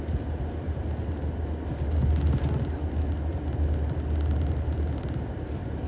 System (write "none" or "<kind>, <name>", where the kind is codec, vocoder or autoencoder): none